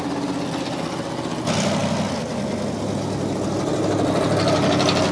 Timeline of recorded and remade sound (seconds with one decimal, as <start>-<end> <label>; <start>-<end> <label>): 0.0-5.1 recorded